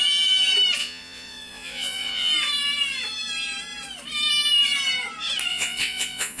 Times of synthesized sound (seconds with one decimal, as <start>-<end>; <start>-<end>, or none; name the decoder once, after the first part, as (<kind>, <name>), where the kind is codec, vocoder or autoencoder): 0.8-2.3 (vocoder, Vocos); 5.5-6.4